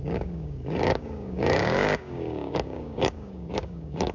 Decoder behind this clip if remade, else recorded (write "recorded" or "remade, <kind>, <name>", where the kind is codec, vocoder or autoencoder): remade, codec, DAC